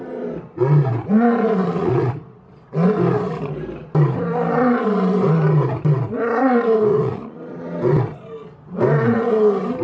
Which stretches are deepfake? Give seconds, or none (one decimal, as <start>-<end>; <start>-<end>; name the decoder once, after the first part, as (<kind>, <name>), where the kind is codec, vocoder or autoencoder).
1.6-2.1 (vocoder, Vocos); 6.9-7.4